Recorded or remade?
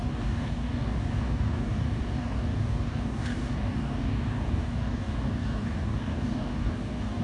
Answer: remade